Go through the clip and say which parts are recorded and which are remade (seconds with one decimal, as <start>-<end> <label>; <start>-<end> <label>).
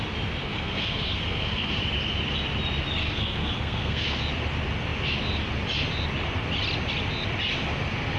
0.0-0.4 recorded; 0.4-1.8 remade; 1.8-3.0 recorded; 3.0-4.2 remade; 4.2-8.2 recorded